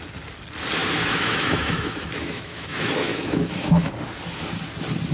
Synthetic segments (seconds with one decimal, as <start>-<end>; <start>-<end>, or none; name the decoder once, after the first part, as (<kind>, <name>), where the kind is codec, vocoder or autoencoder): 0.8-3.9 (autoencoder, DAC-VAE)